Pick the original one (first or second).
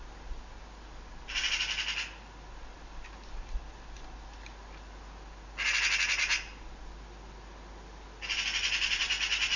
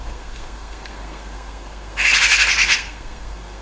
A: first